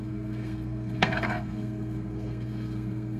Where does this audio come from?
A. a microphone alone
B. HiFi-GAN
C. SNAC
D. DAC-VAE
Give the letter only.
C